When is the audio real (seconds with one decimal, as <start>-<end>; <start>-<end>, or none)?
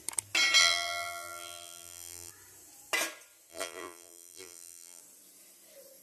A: 0.0-0.6; 2.3-3.5; 5.0-6.0